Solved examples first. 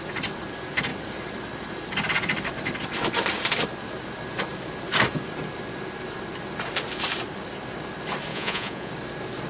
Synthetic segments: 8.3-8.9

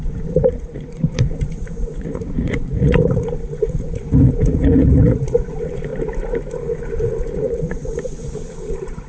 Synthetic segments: 0.0-5.9; 6.5-9.1